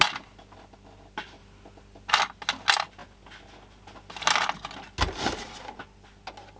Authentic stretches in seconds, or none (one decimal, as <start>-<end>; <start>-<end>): 0.0-6.6